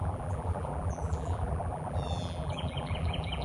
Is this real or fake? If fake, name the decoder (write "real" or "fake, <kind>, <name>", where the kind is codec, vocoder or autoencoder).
fake, vocoder, BigVGAN v2